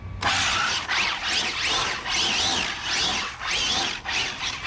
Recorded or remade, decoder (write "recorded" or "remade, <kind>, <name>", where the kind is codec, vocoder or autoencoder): recorded